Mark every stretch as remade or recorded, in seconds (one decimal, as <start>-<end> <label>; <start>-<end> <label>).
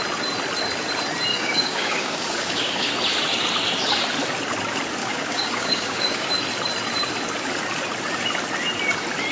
0.0-1.3 recorded; 1.3-2.9 remade; 2.9-5.0 recorded; 5.0-6.3 remade; 6.3-9.3 recorded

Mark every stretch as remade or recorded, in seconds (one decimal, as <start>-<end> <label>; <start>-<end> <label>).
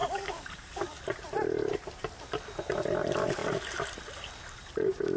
0.0-1.0 remade; 1.0-5.2 recorded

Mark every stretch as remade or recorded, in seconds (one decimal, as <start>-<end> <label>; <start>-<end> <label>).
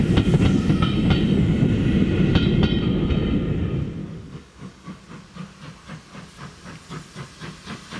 0.0-4.0 recorded; 4.0-5.0 remade; 5.0-8.0 recorded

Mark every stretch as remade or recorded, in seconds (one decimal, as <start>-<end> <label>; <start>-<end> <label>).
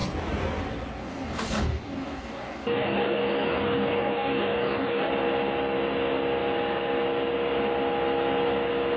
0.0-1.0 recorded; 1.0-5.1 remade; 5.1-9.0 recorded